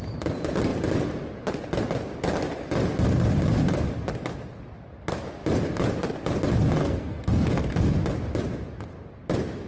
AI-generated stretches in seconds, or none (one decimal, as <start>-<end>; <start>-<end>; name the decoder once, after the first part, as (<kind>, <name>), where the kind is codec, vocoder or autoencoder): 6.8-7.9 (codec, SNAC)